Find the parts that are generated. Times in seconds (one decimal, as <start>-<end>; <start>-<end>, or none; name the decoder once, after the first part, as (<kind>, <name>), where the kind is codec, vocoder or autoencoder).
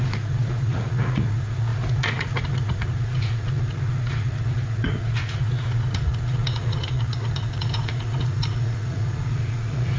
0.0-10.0 (vocoder, Vocos)